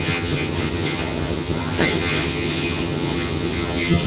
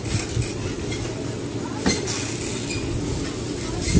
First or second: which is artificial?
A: first